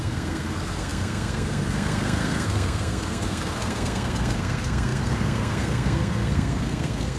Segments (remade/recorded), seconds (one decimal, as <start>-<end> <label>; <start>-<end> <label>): 0.0-7.2 remade